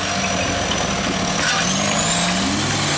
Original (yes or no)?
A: yes